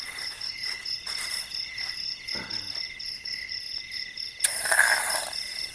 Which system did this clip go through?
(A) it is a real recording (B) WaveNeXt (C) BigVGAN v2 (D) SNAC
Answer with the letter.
A